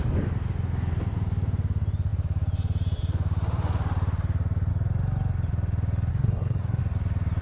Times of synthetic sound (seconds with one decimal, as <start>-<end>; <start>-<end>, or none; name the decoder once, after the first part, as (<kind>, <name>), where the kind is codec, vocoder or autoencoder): 6.1-6.8 (codec, SNAC)